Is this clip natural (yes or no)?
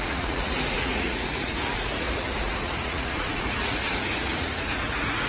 no